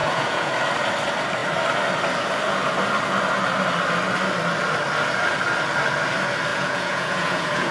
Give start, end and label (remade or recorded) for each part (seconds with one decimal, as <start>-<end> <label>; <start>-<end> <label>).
0.0-0.5 remade; 0.5-6.5 recorded; 6.5-7.7 remade